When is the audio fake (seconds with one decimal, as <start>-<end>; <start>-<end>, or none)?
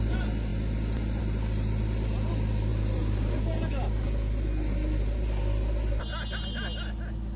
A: none